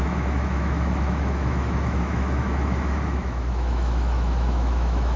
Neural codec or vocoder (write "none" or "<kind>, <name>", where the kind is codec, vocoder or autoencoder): autoencoder, DAC-VAE